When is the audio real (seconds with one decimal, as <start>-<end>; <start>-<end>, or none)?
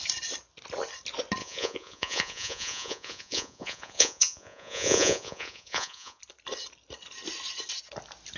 0.0-1.4; 6.2-8.4